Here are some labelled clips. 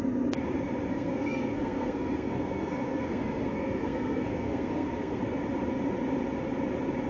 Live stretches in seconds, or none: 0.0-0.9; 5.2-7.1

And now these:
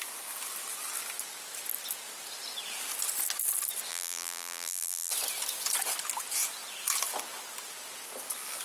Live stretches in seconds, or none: 0.0-3.9; 5.1-8.6

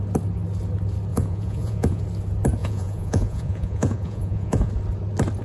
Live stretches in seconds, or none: 0.0-1.1; 2.0-2.6; 4.7-5.4